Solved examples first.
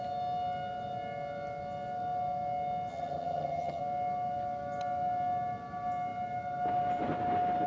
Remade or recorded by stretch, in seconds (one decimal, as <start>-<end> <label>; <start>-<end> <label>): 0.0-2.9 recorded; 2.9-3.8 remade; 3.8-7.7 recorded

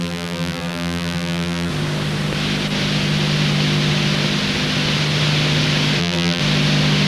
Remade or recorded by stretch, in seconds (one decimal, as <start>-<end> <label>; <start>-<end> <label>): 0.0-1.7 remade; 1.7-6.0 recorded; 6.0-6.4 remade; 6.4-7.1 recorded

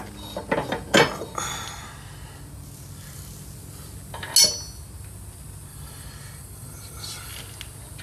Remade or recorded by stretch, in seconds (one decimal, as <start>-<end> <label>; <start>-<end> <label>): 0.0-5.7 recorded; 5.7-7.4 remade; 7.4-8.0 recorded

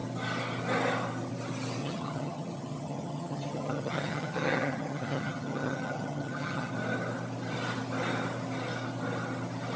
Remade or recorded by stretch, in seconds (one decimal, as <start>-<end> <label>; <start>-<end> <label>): 0.0-1.8 recorded; 1.8-6.7 remade; 6.7-9.8 recorded

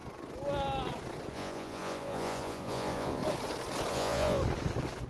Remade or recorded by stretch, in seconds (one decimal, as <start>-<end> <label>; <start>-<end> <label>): 0.0-1.3 recorded; 1.3-3.2 remade; 3.2-3.9 recorded; 3.9-4.4 remade; 4.4-5.1 recorded